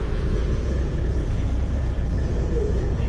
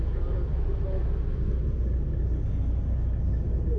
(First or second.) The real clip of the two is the second